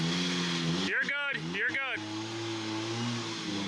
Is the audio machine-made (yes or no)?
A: no